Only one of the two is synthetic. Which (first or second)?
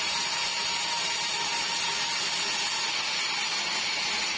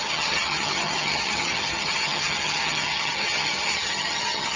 second